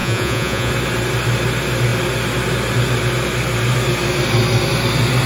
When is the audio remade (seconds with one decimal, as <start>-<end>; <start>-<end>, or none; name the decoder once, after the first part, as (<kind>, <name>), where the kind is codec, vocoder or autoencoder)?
0.0-0.7 (vocoder, Vocos)